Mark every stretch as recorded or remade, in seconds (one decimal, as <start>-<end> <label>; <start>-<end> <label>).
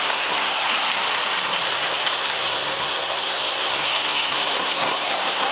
0.0-0.9 remade; 0.9-1.7 recorded; 1.7-5.5 remade